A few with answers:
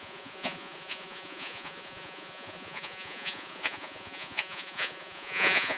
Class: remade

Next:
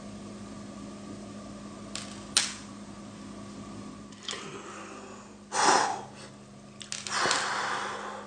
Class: recorded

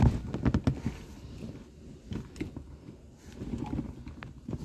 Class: recorded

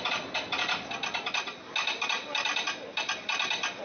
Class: recorded